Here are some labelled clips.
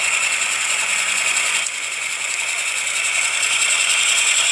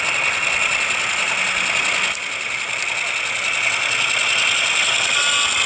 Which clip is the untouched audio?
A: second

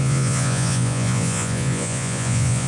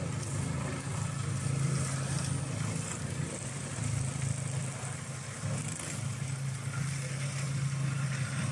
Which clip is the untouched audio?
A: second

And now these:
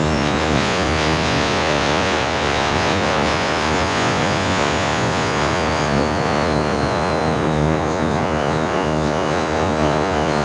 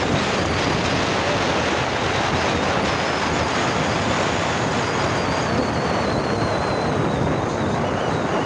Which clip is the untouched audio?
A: second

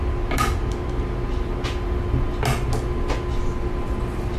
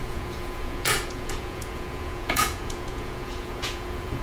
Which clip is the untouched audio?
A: first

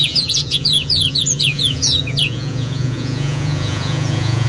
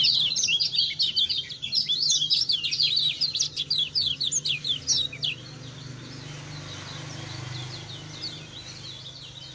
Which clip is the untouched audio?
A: second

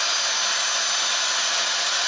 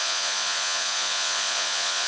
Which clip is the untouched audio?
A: first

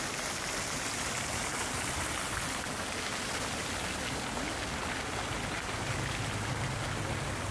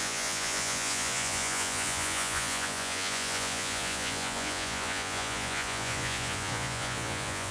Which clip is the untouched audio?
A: first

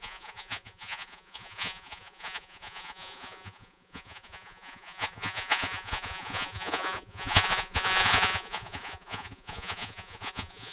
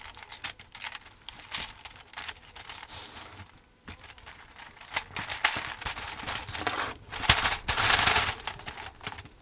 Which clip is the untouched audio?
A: second